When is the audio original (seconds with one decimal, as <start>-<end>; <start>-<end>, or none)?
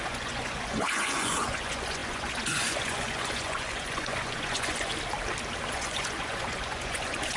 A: 4.9-5.7